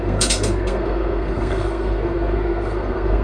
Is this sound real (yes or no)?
no